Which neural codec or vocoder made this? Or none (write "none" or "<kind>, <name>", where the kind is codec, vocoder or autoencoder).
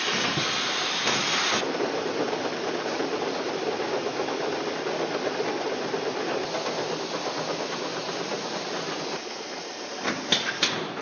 none